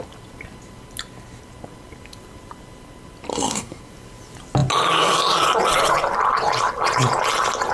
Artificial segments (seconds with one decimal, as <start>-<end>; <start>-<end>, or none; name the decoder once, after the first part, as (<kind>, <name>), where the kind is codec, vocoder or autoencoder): 3.3-3.8 (codec, SNAC)